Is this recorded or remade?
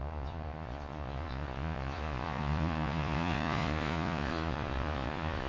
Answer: remade